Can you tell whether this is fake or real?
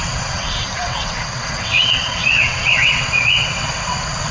fake